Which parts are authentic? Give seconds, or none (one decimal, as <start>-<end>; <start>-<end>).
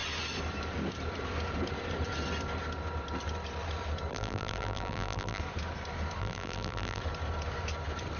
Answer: 0.0-4.1; 5.4-6.2; 7.0-8.2